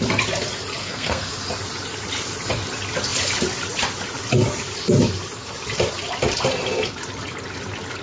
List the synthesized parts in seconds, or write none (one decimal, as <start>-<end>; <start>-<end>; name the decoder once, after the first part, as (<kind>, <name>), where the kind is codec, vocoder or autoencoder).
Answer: 0.8-1.3 (codec, SNAC)